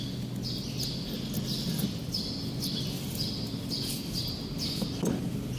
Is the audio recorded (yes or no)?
yes